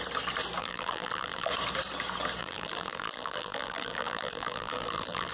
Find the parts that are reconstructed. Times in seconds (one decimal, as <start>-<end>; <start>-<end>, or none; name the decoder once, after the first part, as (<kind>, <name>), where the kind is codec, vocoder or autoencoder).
0.6-1.5 (vocoder, BigVGAN v2); 2.4-5.3